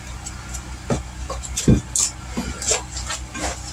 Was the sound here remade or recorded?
recorded